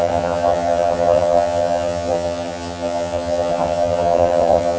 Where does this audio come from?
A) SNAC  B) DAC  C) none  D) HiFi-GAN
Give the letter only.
D